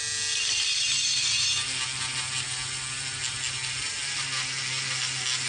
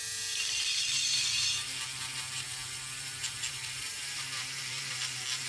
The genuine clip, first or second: first